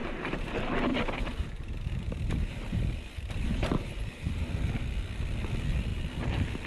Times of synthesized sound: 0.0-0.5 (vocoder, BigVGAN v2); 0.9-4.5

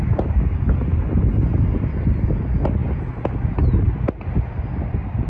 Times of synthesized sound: none